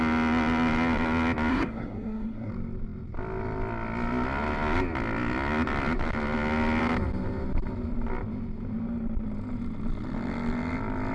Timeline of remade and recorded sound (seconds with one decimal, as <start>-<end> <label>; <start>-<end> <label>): 0.0-1.5 recorded; 1.5-2.5 remade; 2.5-11.1 recorded